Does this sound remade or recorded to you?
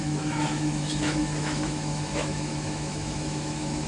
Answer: remade